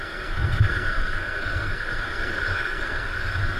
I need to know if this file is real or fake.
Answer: fake